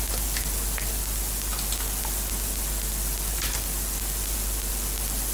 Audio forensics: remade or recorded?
recorded